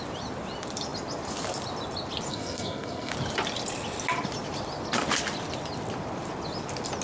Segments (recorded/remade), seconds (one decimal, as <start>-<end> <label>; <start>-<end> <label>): 0.0-2.3 recorded; 2.3-3.1 remade; 3.1-7.0 recorded